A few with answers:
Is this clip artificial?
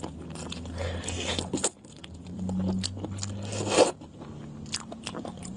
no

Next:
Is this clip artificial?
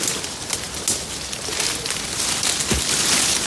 no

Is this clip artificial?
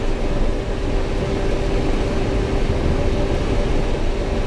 no